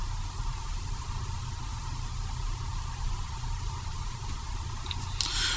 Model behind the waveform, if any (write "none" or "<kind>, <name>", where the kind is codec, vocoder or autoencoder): none